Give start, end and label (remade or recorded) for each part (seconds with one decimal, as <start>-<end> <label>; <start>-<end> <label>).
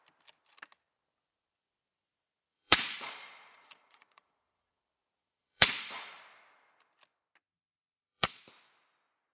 0.0-2.5 recorded; 2.5-4.8 remade; 4.8-5.2 recorded; 5.2-6.2 remade; 6.2-7.5 recorded; 7.5-8.4 remade; 8.4-9.3 recorded